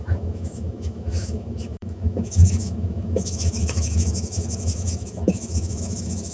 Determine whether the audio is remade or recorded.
remade